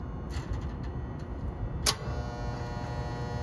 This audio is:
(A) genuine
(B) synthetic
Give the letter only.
A